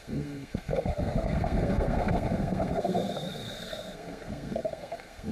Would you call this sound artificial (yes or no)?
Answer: yes